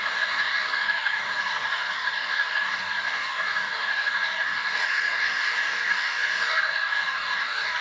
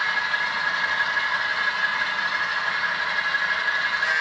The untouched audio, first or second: second